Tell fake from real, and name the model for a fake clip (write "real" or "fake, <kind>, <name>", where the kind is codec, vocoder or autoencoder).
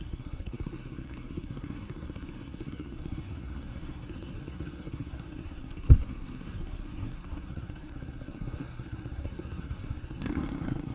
fake, codec, SNAC